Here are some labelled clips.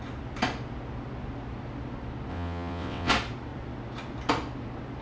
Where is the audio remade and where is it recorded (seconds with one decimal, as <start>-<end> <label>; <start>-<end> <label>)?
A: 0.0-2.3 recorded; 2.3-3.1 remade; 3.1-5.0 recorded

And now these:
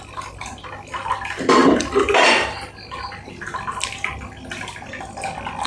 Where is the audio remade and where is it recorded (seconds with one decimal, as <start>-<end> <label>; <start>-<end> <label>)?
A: 0.0-5.7 recorded

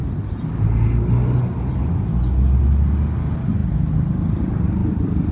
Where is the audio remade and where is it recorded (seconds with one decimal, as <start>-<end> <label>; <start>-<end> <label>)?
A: 0.0-4.8 recorded; 4.8-5.3 remade